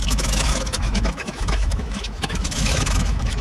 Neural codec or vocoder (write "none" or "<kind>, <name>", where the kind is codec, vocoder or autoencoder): autoencoder, DAC-VAE